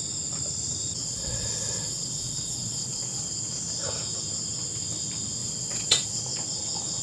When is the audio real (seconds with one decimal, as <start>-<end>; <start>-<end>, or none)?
0.0-1.0; 3.3-5.4; 6.2-7.0